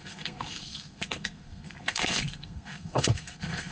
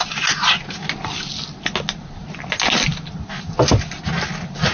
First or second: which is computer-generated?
first